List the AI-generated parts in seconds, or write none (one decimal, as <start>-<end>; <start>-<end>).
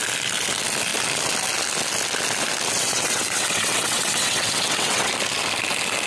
2.8-5.1